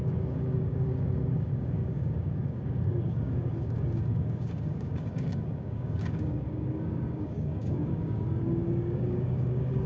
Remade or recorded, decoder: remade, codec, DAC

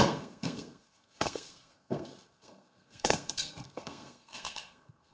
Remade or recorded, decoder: remade, codec, SNAC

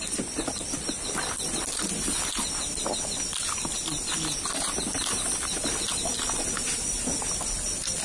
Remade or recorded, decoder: recorded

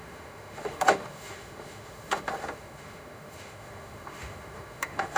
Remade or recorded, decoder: remade, autoencoder, DAC-VAE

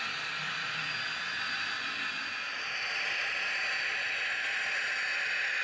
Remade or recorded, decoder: recorded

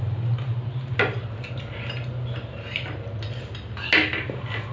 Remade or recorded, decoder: recorded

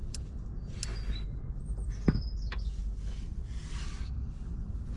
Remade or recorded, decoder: recorded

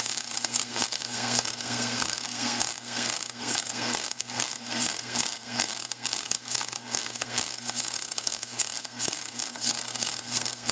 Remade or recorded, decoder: remade, codec, SNAC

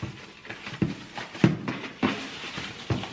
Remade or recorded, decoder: recorded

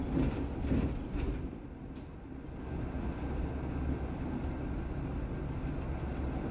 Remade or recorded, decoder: recorded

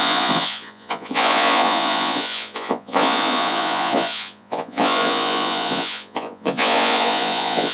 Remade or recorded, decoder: remade, vocoder, Vocos